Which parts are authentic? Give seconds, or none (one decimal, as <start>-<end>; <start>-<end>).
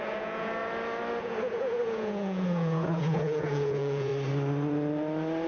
0.6-1.2; 4.1-5.5